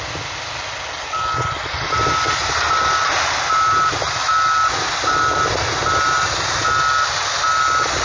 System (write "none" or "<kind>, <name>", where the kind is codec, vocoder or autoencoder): none